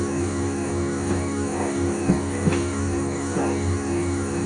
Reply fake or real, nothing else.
fake